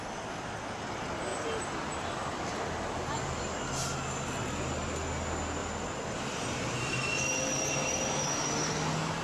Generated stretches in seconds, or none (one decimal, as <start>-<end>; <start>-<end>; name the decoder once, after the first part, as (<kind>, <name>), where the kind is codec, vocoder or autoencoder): 1.3-2.1 (vocoder, BigVGAN v2); 5.6-8.0